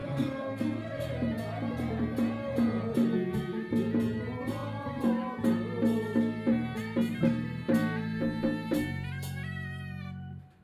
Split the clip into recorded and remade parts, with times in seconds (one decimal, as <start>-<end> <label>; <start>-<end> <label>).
0.0-1.1 remade; 1.1-10.6 recorded